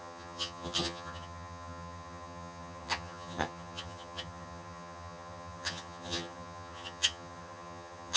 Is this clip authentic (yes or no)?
no